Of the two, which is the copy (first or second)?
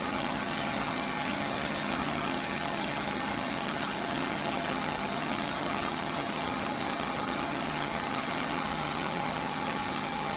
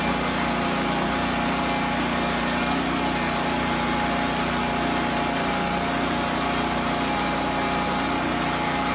first